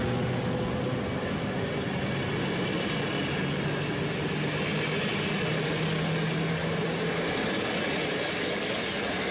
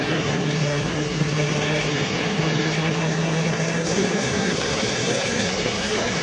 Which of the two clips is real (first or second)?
first